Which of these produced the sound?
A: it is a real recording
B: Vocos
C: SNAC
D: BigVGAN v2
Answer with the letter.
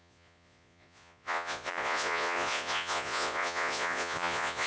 B